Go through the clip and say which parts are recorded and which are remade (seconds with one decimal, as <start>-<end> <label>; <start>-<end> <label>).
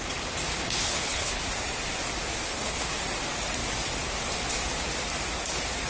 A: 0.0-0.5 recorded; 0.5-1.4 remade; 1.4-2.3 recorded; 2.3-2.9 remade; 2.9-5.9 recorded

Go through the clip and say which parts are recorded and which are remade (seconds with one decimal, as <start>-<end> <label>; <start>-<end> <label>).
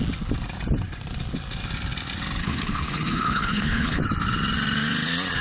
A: 0.0-2.4 recorded; 2.4-4.0 remade; 4.0-5.4 recorded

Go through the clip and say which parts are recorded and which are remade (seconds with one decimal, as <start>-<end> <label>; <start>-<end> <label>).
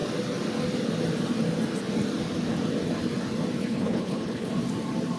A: 0.0-3.6 recorded; 3.6-4.5 remade; 4.5-5.2 recorded